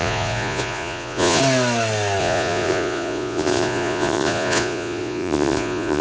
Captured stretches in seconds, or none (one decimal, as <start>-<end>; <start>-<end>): 1.4-2.2